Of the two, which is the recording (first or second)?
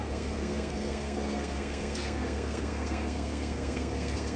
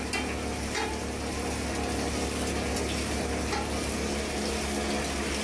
second